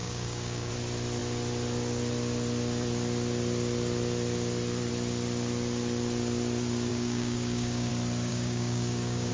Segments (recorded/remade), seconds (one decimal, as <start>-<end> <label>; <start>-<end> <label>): 0.0-0.7 remade; 0.7-6.9 recorded; 6.9-7.9 remade; 7.9-8.3 recorded; 8.3-9.3 remade